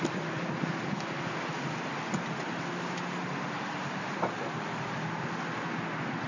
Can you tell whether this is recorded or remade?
recorded